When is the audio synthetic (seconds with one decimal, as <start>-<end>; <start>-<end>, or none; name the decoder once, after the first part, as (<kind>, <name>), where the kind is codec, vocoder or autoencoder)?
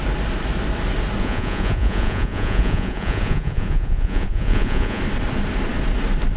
1.2-5.0 (vocoder, Vocos)